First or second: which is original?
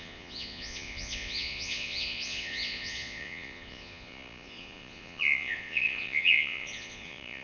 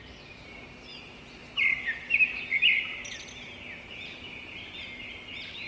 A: second